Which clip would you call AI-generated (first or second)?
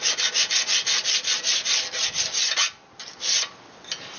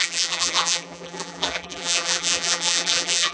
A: second